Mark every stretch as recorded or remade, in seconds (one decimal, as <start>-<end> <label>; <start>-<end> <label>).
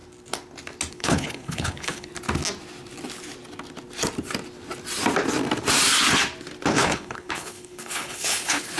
0.0-0.9 recorded; 0.9-2.1 remade; 2.1-6.7 recorded; 6.7-8.8 remade